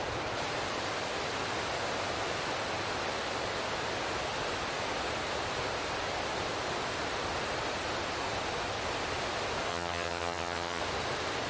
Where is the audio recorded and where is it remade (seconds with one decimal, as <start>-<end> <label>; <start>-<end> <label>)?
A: 0.0-9.7 recorded; 9.7-10.8 remade; 10.8-11.5 recorded